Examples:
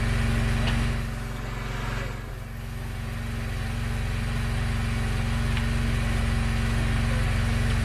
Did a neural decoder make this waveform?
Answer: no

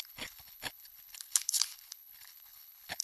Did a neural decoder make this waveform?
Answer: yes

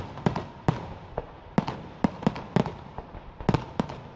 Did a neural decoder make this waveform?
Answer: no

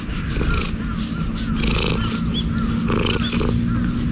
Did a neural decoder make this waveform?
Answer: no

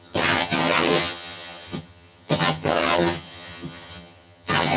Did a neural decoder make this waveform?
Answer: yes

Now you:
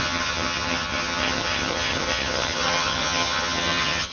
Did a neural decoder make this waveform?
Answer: yes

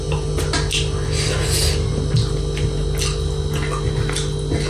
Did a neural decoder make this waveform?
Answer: no